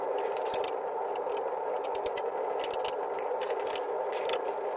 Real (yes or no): yes